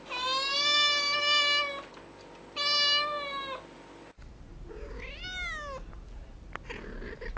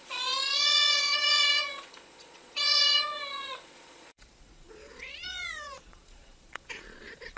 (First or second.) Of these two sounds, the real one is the first